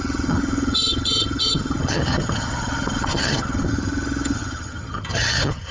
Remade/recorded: remade